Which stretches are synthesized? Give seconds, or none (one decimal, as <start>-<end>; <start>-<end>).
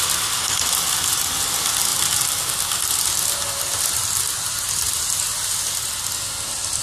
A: none